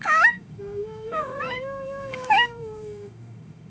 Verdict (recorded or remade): remade